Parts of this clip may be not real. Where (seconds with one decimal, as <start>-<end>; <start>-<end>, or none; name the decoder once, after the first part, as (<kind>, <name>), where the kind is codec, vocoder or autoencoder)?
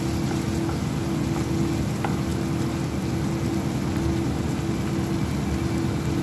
none